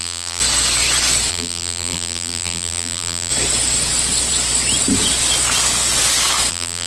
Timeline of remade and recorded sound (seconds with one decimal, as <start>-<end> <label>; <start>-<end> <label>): 0.0-0.4 remade; 0.4-1.3 recorded; 1.3-3.3 remade; 3.3-6.5 recorded; 6.5-6.9 remade